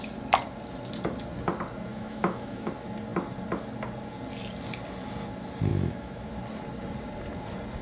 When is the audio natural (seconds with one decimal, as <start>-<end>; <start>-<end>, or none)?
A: 0.0-1.9; 2.7-5.7; 6.3-7.8